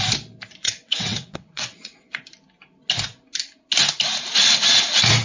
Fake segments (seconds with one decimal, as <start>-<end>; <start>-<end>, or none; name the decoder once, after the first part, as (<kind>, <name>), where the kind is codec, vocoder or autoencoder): 0.6-2.2 (vocoder, WaveNeXt)